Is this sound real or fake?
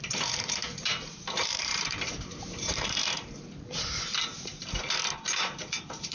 fake